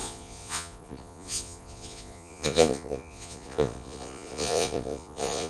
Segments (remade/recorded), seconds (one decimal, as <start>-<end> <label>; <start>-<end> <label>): 0.0-5.5 remade